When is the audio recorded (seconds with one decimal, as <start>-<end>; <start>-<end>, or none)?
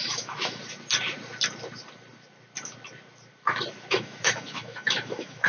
0.6-3.9